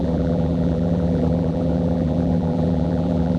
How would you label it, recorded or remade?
remade